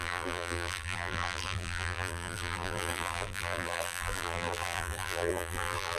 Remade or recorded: remade